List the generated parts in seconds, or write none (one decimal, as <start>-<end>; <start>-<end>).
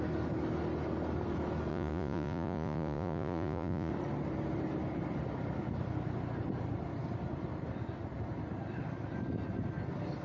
1.7-3.9